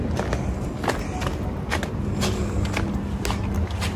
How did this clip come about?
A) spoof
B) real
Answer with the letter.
B